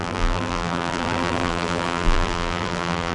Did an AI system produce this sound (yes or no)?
yes